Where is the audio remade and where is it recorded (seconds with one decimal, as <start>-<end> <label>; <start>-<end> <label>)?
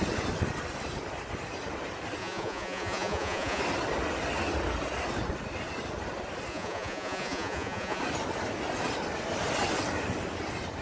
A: 0.0-2.2 recorded; 2.2-3.6 remade; 3.6-6.5 recorded; 6.5-8.0 remade; 8.0-10.8 recorded